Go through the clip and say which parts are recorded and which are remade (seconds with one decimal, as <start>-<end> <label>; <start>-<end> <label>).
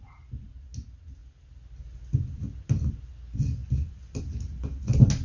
0.0-3.6 recorded; 3.6-4.2 remade; 4.2-5.2 recorded